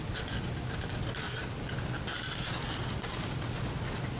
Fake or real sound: real